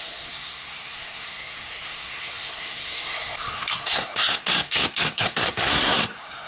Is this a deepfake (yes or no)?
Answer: yes